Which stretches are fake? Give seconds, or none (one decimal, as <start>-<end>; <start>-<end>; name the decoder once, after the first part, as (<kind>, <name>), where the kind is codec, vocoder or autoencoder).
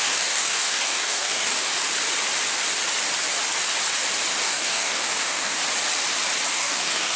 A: 0.0-1.7 (codec, DAC); 4.4-5.6; 6.5-7.2